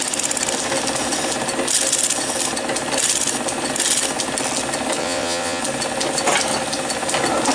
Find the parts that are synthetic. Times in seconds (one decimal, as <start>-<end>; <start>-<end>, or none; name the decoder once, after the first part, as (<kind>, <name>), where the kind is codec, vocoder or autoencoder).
5.0-5.6 (vocoder, WaveNeXt)